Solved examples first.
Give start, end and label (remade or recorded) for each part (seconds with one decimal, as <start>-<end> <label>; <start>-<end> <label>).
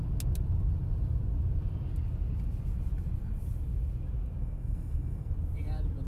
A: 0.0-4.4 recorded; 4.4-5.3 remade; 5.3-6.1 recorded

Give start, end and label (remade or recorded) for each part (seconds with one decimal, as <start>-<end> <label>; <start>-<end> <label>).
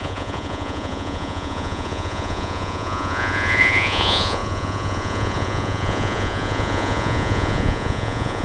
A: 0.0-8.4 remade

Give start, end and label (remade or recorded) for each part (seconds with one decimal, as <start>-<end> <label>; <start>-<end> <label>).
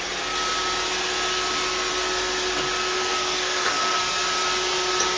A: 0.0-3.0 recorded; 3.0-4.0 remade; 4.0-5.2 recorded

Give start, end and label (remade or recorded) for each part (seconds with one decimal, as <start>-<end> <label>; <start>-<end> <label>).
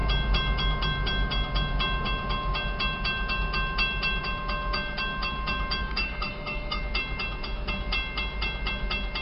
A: 0.0-5.8 recorded; 5.8-6.8 remade; 6.8-9.2 recorded